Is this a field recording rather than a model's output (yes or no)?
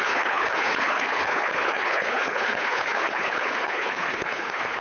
no